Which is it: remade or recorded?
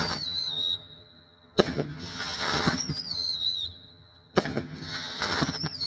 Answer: remade